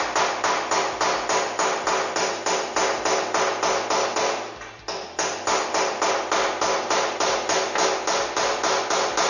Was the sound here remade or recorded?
recorded